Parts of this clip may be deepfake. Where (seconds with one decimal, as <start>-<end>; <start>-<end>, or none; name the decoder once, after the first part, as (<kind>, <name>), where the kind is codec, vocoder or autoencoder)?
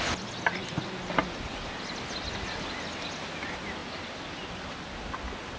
none